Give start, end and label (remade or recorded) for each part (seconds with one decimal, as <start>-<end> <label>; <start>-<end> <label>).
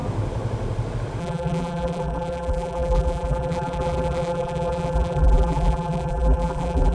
0.0-1.2 recorded; 1.2-6.9 remade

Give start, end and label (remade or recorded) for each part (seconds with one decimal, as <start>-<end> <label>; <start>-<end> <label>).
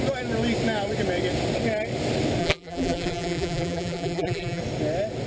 0.0-2.4 recorded; 2.4-4.6 remade; 4.6-5.3 recorded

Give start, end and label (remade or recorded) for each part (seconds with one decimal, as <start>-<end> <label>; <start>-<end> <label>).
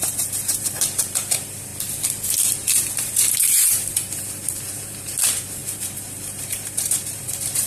0.0-1.7 remade; 1.7-2.9 recorded; 2.9-7.7 remade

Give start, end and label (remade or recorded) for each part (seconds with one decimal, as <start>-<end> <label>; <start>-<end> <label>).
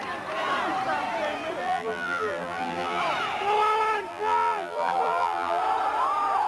0.0-1.6 recorded; 1.6-3.0 remade; 3.0-4.1 recorded; 4.1-5.6 remade; 5.6-6.5 recorded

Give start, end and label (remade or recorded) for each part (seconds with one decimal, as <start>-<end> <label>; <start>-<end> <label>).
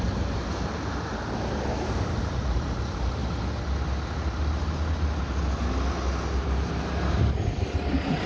0.0-3.2 remade; 3.2-8.3 recorded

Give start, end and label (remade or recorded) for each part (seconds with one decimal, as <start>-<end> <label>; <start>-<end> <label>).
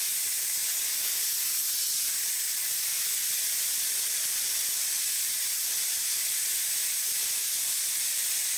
0.0-2.9 recorded; 2.9-5.0 remade; 5.0-8.6 recorded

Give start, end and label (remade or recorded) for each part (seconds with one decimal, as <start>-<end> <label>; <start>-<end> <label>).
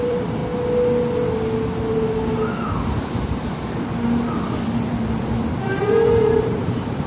0.0-0.4 remade; 0.4-4.7 recorded; 4.7-7.1 remade